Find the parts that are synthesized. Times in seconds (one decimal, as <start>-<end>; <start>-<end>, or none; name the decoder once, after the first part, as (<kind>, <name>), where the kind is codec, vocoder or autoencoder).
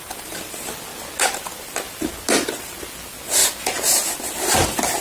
none